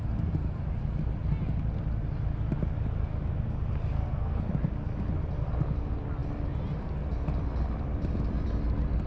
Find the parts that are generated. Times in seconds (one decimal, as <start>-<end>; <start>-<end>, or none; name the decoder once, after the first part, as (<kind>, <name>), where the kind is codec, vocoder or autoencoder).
3.9-4.4 (codec, SNAC)